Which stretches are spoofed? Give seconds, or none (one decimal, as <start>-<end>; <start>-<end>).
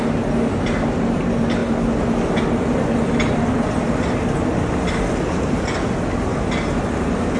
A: none